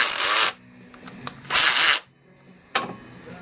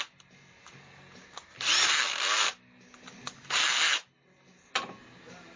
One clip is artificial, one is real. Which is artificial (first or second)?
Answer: second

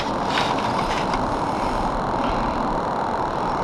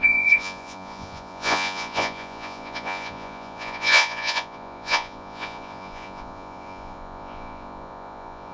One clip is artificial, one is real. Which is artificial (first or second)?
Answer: second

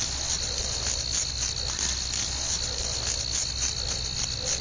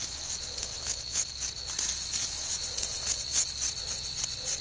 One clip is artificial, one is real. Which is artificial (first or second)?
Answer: second